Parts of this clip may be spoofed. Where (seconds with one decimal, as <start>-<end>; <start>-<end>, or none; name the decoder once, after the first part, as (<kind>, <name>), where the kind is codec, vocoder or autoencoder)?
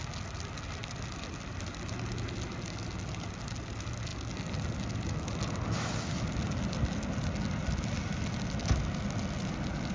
none